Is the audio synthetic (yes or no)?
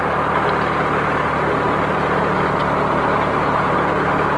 no